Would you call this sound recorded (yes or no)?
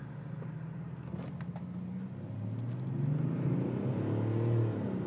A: yes